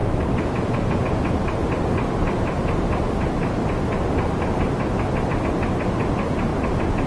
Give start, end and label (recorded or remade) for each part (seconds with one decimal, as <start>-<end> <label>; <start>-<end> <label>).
0.0-3.6 recorded; 3.6-4.3 remade; 4.3-6.5 recorded; 6.5-7.1 remade